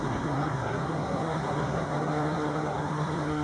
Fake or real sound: fake